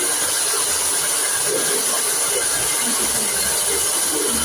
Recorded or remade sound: recorded